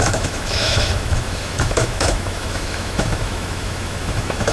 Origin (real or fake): fake